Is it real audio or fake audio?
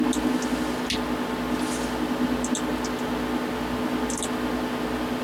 real